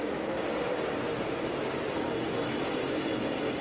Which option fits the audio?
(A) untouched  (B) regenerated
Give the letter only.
A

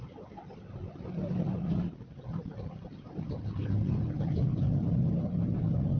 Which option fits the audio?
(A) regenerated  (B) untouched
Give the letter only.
B